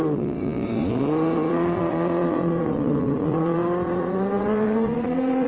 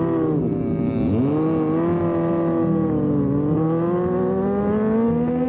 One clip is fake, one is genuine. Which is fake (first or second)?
first